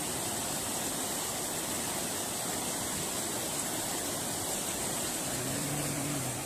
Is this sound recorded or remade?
remade